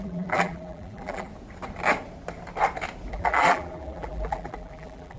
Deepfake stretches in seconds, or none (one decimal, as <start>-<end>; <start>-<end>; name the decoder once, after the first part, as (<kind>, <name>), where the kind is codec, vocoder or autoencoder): 0.0-1.3 (vocoder, BigVGAN v2); 3.1-5.2